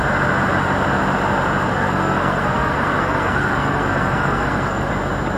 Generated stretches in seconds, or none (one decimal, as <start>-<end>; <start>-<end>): 1.7-4.9